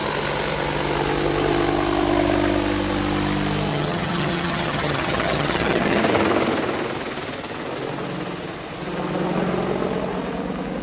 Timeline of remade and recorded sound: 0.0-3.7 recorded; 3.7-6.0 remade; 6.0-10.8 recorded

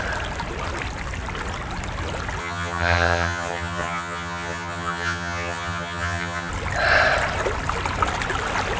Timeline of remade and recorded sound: 0.0-2.4 recorded; 2.4-6.5 remade; 6.5-8.8 recorded

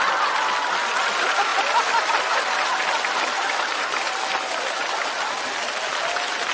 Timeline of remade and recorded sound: 0.0-6.5 recorded